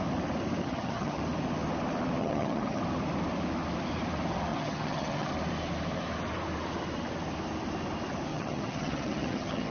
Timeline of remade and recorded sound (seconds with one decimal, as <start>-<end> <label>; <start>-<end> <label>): 0.0-0.6 recorded; 0.6-1.2 remade; 1.2-2.2 recorded; 2.2-2.8 remade; 2.8-4.5 recorded; 4.5-5.3 remade; 5.3-8.3 recorded; 8.3-9.7 remade